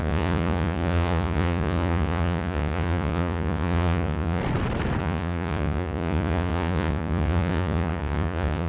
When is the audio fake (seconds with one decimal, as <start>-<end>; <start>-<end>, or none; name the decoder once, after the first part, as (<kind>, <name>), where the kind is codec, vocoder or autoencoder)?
0.0-4.4 (vocoder, Vocos); 5.0-8.7